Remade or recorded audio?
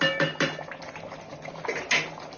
recorded